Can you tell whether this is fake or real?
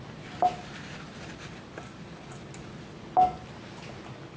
real